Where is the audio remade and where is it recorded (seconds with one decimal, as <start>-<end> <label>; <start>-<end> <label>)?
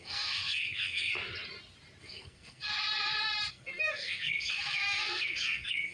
0.0-1.1 remade; 1.1-2.0 recorded; 2.0-2.7 remade; 2.7-3.5 recorded; 3.5-5.9 remade